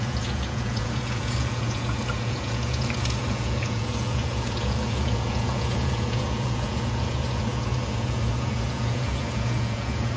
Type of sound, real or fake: fake